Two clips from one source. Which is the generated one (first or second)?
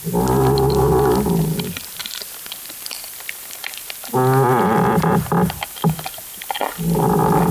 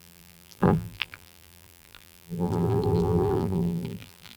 second